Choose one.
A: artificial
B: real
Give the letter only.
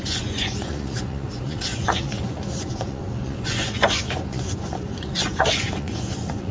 A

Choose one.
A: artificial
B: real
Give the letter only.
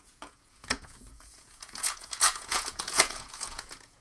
A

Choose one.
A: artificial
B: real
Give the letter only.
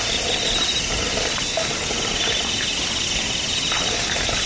B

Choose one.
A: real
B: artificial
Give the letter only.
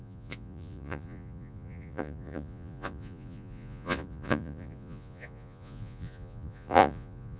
B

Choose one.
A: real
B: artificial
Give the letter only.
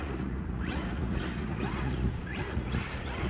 B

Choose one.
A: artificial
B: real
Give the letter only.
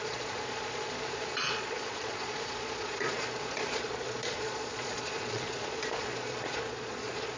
A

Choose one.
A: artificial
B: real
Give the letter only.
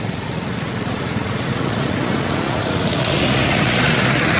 A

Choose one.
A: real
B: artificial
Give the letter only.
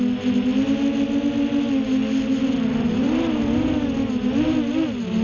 A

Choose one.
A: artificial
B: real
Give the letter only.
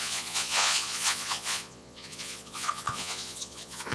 A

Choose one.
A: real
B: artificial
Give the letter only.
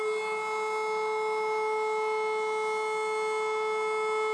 A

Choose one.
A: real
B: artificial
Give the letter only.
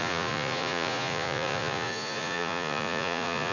B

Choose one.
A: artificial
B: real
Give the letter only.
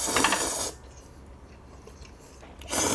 B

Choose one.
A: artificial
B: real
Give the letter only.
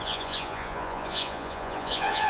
A